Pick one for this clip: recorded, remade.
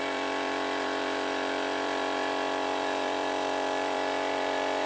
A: remade